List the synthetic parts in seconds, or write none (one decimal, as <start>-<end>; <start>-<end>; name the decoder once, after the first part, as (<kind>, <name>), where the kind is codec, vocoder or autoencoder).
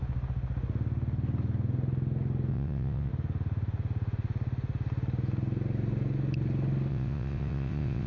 2.5-3.1 (vocoder, WaveNeXt); 6.9-8.1